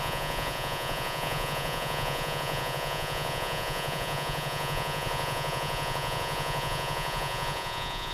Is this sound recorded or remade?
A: remade